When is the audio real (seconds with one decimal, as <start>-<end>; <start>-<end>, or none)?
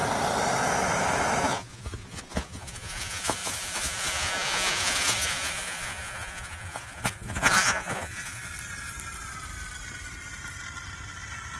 0.0-1.4; 8.5-11.6